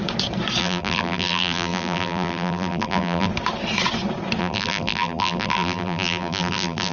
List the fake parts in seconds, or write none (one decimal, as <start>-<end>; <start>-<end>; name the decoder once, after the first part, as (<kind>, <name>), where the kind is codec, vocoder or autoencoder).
0.6-3.3 (vocoder, BigVGAN v2); 4.4-6.9